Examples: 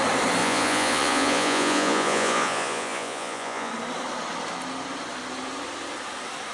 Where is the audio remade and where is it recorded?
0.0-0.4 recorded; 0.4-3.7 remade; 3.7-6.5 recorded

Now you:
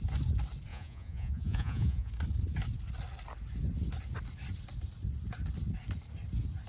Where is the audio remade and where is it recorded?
0.0-0.7 recorded; 0.7-2.1 remade; 2.1-6.7 recorded